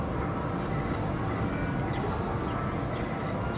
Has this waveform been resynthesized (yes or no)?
no